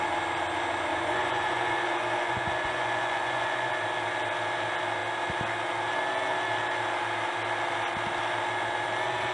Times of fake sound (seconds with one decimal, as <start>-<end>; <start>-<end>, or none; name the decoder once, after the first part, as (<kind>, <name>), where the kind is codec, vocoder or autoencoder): 0.9-3.7 (vocoder, Vocos)